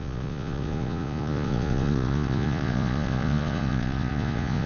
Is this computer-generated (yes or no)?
yes